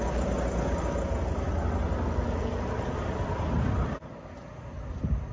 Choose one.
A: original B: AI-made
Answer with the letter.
A